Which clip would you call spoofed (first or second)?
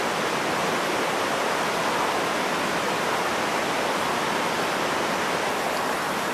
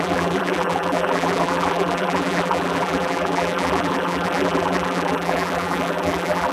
second